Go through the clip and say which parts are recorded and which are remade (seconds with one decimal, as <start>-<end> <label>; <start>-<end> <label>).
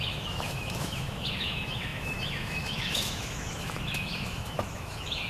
0.0-5.3 remade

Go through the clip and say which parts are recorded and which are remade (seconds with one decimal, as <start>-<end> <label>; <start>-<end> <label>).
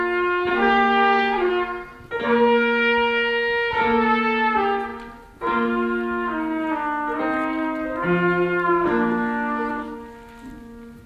0.0-0.5 recorded; 0.5-1.5 remade; 1.5-11.1 recorded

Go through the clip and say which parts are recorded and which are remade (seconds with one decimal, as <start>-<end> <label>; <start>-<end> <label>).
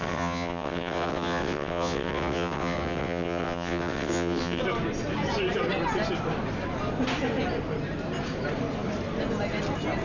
0.0-4.6 remade; 4.6-10.0 recorded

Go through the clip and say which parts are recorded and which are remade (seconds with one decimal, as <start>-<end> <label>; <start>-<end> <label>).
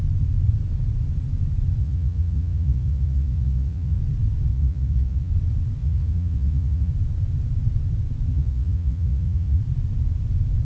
0.0-1.8 recorded; 1.8-4.0 remade; 4.0-4.5 recorded; 4.5-5.3 remade; 5.3-5.8 recorded; 5.8-6.9 remade; 6.9-8.3 recorded; 8.3-9.6 remade; 9.6-10.6 recorded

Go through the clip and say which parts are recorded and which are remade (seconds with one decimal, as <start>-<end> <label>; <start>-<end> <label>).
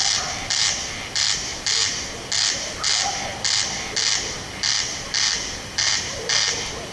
0.0-6.9 remade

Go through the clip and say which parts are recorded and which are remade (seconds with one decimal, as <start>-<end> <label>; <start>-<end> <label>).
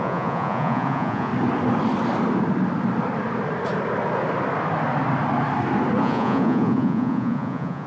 0.0-1.3 remade; 1.3-6.0 recorded; 6.0-7.9 remade